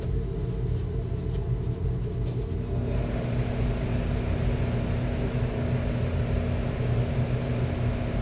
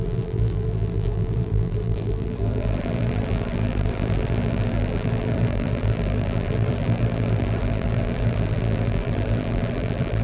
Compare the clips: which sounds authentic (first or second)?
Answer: first